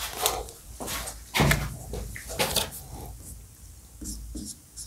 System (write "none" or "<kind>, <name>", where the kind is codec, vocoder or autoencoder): none